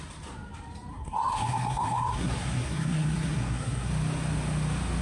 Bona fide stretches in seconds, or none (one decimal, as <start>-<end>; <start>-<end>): 0.0-0.9; 3.9-5.0